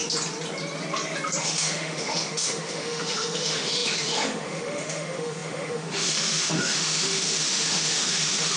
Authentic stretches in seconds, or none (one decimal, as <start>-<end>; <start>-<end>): 0.0-1.4